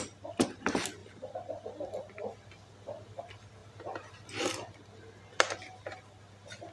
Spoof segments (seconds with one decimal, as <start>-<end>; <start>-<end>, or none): 3.6-4.3